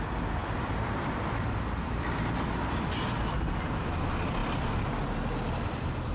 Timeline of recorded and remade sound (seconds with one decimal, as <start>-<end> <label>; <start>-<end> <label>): 0.0-4.4 remade; 4.4-5.5 recorded; 5.5-6.1 remade